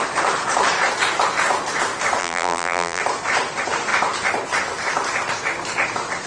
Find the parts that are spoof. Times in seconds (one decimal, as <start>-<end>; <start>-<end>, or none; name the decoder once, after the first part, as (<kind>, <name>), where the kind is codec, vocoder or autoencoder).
2.2-3.0 (vocoder, BigVGAN v2)